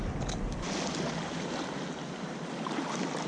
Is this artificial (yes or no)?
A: no